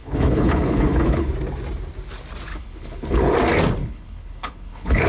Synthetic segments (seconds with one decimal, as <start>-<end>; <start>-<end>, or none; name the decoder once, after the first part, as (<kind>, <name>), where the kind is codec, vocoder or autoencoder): 0.0-1.3 (codec, HILCodec); 2.5-3.3; 3.8-5.1